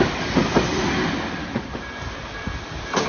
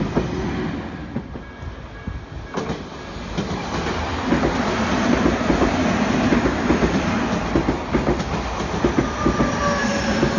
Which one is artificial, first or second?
first